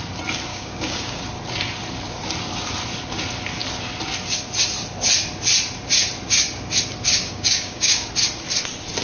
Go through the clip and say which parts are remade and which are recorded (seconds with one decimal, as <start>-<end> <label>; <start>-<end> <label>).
0.0-0.5 recorded; 0.5-1.2 remade; 1.2-7.1 recorded; 7.1-8.1 remade; 8.1-9.0 recorded